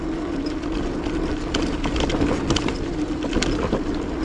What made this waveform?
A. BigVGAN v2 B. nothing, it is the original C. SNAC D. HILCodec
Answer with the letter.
B